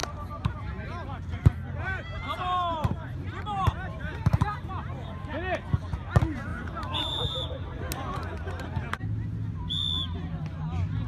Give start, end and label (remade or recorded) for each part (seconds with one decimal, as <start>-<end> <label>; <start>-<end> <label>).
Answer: 0.0-4.7 remade; 4.7-6.5 recorded; 6.5-7.8 remade; 7.8-11.1 recorded